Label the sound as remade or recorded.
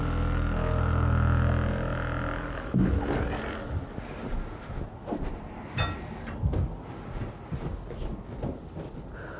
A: recorded